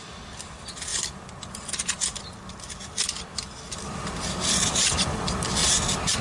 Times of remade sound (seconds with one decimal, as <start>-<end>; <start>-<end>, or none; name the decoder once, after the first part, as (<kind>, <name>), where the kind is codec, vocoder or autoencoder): none